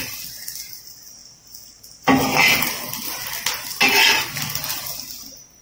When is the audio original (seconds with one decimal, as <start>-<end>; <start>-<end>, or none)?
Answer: 0.0-5.6